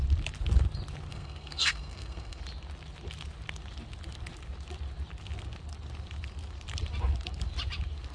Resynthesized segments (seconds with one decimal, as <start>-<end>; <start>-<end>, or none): 1.1-2.4